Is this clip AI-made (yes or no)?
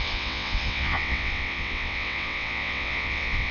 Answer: yes